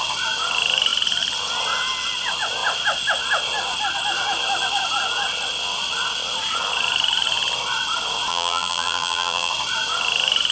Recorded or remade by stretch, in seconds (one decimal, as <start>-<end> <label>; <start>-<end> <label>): 0.0-8.3 recorded; 8.3-9.5 remade; 9.5-10.5 recorded